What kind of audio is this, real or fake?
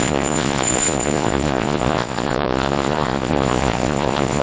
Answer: fake